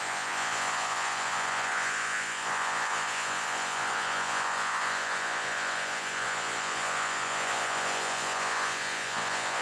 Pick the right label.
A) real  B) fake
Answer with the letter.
B